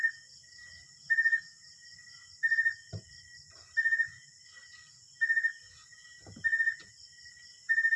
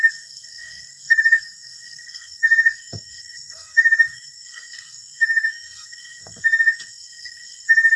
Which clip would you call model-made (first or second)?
second